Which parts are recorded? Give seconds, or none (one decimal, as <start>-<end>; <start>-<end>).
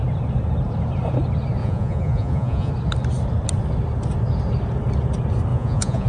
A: 0.0-1.6; 2.7-5.5